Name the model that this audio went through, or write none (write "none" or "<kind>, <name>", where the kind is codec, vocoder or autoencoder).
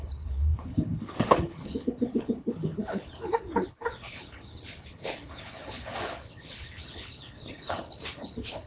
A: codec, HILCodec